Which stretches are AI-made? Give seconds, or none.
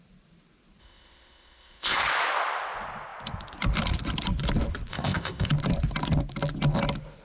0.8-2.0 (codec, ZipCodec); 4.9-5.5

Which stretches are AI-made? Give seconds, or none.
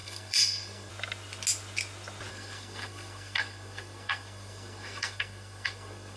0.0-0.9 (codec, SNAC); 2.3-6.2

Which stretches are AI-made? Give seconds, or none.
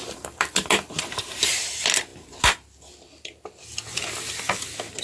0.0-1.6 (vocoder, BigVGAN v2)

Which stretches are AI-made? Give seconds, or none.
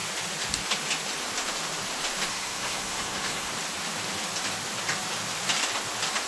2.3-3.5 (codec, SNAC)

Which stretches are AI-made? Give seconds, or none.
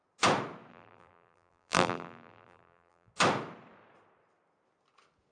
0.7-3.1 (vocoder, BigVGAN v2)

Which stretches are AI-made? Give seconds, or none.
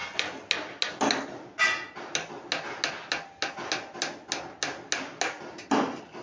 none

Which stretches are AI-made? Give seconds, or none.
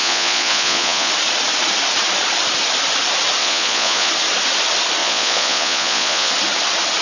0.0-1.1 (vocoder, Vocos); 3.4-4.1; 5.0-6.3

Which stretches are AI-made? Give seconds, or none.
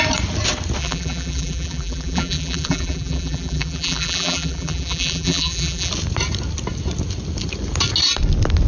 0.8-5.9 (vocoder, BigVGAN v2)